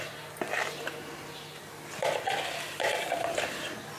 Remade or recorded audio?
recorded